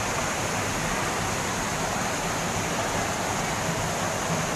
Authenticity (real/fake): real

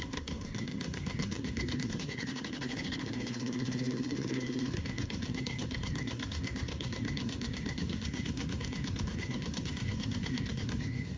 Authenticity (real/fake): fake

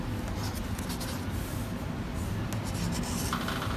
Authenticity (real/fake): real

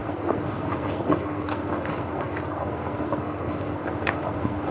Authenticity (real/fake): fake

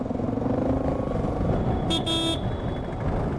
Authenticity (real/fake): real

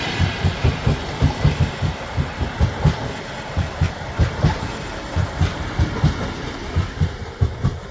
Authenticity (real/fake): real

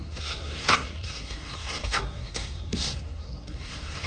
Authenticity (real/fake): fake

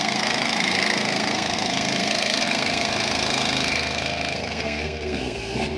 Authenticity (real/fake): fake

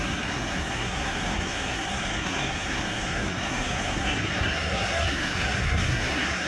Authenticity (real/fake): fake